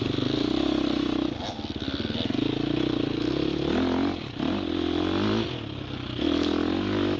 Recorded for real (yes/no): yes